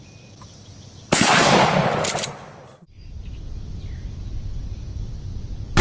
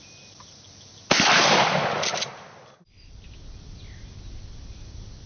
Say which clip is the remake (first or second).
first